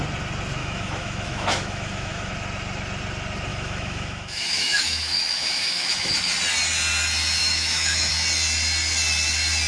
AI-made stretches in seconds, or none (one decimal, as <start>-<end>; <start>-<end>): 0.6-2.3; 3.5-6.1; 7.4-8.1